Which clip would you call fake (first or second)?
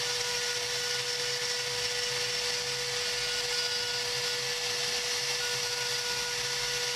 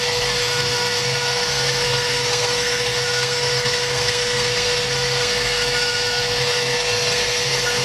second